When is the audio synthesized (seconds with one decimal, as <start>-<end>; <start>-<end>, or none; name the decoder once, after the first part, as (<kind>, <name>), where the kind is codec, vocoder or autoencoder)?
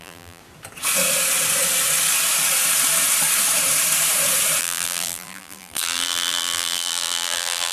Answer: 0.0-0.4 (vocoder, BigVGAN v2); 4.6-7.7